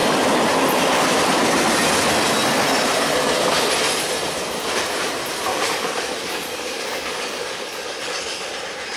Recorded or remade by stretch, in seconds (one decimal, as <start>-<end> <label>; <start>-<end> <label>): 0.0-5.5 recorded; 5.5-8.5 remade; 8.5-9.0 recorded